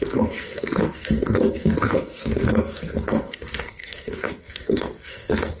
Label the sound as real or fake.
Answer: fake